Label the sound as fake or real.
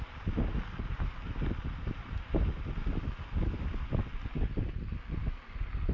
real